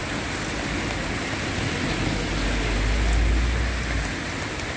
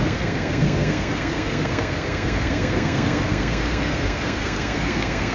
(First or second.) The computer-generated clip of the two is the second